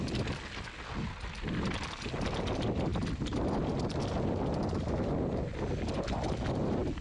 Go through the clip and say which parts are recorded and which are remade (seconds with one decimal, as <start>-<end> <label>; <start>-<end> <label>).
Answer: 0.0-7.0 recorded